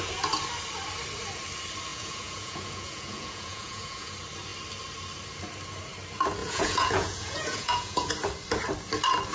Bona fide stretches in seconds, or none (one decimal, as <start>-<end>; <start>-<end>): 0.0-1.9; 4.1-6.4; 8.1-9.3